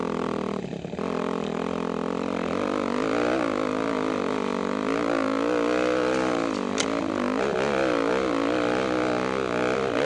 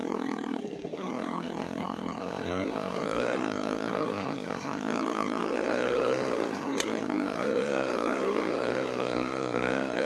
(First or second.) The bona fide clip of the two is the first